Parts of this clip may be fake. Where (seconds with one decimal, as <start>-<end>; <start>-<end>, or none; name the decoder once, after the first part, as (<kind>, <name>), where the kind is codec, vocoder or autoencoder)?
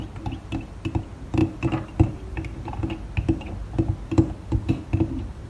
none